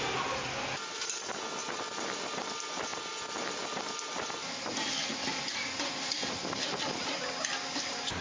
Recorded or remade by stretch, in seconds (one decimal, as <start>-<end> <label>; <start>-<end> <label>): 0.0-8.2 recorded